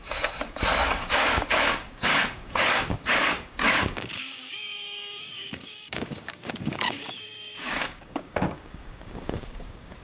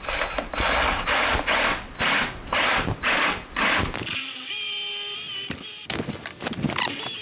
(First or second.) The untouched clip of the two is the second